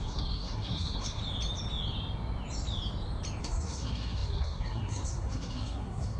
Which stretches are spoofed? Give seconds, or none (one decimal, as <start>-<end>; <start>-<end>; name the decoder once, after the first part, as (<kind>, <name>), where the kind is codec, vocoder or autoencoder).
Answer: 0.0-1.2 (codec, SNAC); 3.4-6.2